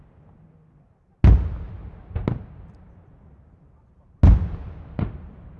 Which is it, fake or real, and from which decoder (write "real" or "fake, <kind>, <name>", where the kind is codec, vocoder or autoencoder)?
real